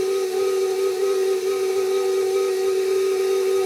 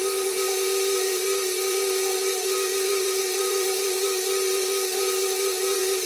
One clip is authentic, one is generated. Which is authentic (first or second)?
first